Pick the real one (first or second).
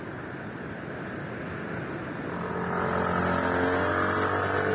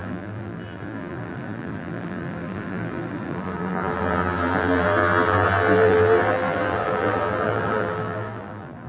first